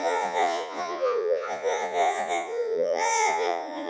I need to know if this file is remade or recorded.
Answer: remade